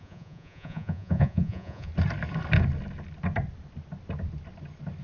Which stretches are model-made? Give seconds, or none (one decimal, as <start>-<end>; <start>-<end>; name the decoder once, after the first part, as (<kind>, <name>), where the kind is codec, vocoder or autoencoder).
0.0-1.9 (vocoder, Vocos)

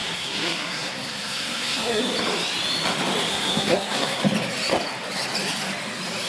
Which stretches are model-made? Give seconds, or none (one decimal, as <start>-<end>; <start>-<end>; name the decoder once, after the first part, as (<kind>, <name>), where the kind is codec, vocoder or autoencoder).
0.0-2.0 (codec, SNAC); 3.3-4.2

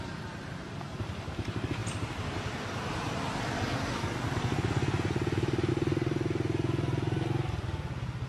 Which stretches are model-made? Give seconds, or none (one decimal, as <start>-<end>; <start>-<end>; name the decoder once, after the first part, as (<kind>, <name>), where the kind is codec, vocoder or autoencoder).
none

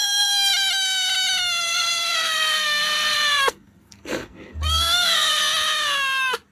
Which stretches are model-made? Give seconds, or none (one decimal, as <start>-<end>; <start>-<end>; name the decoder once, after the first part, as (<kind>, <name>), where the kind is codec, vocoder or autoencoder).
0.0-0.5 (codec, SNAC); 1.6-5.4

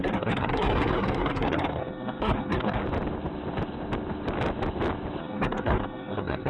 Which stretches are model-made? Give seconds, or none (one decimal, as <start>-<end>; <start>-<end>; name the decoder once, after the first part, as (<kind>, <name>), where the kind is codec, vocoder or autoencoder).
0.0-2.8 (codec, SNAC); 5.2-6.5

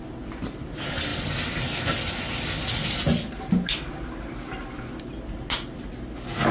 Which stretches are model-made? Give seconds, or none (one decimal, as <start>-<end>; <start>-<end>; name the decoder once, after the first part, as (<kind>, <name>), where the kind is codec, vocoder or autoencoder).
none